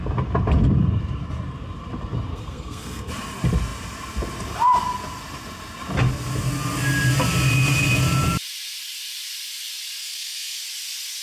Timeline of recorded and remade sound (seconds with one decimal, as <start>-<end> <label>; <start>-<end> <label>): 0.0-2.3 recorded; 2.3-3.1 remade; 3.1-10.0 recorded; 10.0-10.6 remade; 10.6-11.2 recorded